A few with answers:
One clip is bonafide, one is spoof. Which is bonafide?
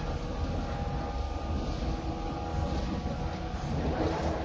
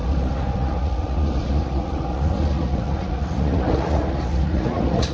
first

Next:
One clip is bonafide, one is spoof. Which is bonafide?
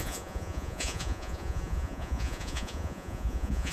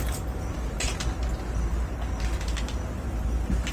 second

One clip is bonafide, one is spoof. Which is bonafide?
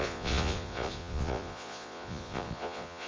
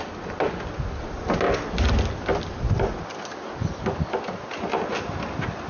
second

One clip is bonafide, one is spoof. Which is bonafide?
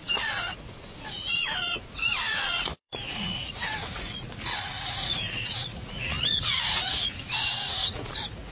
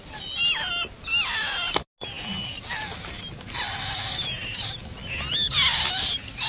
second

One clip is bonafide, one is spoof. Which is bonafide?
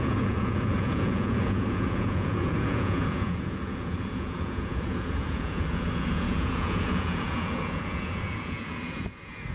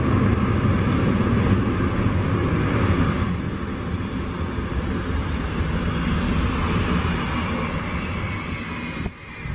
second